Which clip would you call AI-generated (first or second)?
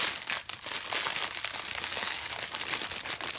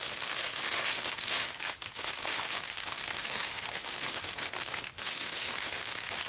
second